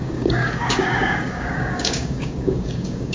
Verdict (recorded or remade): remade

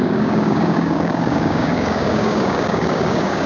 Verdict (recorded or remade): remade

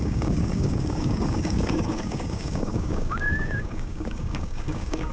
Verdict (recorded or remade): remade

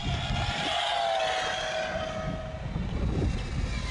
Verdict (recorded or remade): recorded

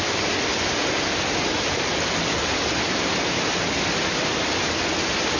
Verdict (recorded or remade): recorded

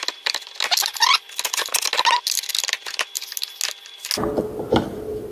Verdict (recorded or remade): recorded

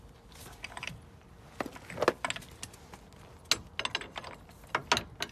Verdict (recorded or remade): recorded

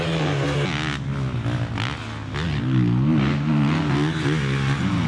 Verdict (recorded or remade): recorded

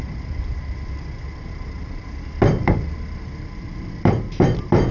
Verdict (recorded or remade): recorded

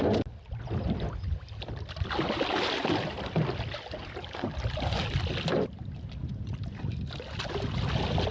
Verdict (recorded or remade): recorded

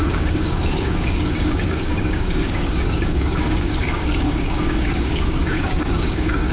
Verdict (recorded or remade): remade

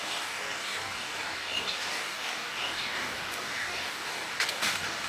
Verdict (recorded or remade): remade